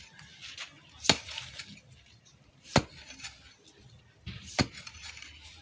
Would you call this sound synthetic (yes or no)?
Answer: no